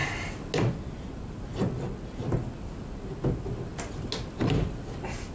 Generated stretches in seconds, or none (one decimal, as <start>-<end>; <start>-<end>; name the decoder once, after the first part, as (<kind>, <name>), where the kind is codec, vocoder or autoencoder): none